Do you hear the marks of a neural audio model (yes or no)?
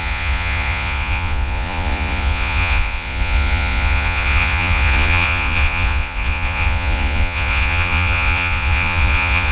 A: yes